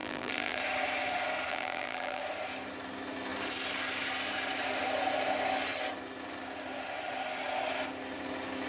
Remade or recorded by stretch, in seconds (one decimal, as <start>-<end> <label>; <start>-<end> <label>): 0.0-0.6 remade; 0.6-1.5 recorded; 1.5-2.2 remade; 2.2-8.7 recorded